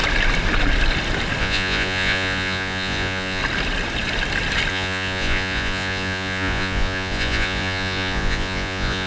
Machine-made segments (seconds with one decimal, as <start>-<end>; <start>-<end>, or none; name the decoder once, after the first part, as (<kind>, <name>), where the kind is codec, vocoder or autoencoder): 1.4-3.4 (vocoder, Vocos); 4.7-9.1